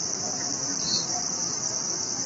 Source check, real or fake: real